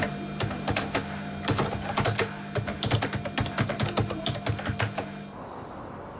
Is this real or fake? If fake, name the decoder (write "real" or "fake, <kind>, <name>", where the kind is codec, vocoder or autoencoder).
real